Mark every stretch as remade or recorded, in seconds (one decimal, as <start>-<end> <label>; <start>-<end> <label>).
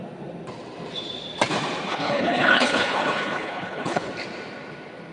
0.0-1.9 recorded; 1.9-4.1 remade; 4.1-5.1 recorded